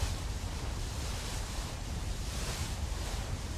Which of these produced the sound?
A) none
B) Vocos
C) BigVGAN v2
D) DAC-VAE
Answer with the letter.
C